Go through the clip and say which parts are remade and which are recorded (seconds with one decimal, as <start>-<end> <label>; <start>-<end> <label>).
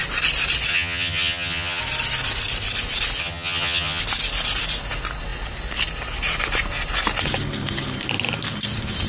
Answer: 0.0-0.7 recorded; 0.7-1.8 remade; 1.8-3.2 recorded; 3.2-4.0 remade; 4.0-9.1 recorded